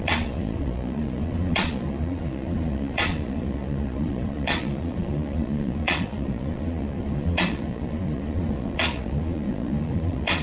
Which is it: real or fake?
fake